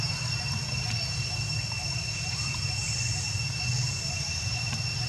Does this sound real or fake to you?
real